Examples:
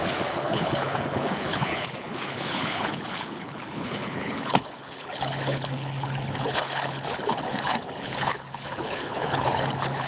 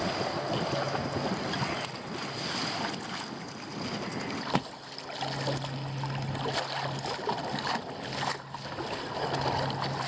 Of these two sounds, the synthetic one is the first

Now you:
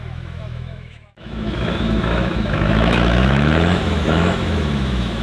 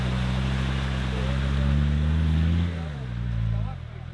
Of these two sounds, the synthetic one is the first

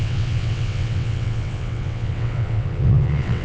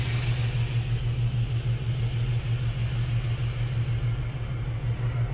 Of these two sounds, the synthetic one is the first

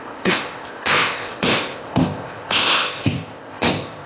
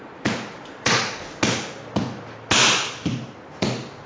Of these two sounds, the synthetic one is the first